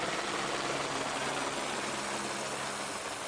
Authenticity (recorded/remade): recorded